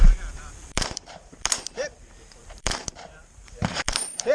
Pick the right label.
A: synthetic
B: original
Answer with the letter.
A